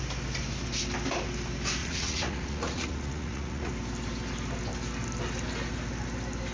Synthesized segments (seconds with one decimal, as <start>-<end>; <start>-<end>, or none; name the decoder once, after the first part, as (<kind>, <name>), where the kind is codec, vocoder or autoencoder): 1.8-3.7 (vocoder, Vocos)